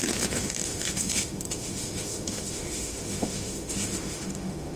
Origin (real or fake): fake